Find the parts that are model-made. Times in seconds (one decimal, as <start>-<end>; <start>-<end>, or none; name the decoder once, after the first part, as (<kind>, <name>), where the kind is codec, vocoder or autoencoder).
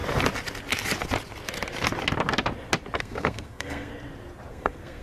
3.0-3.9 (codec, SNAC); 4.5-5.0